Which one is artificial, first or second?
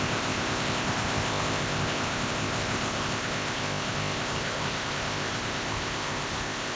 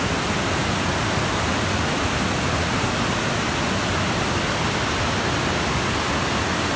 first